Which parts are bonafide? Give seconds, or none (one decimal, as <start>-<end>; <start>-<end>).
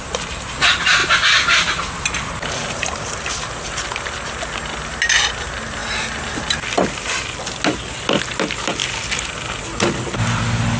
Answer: 0.0-10.8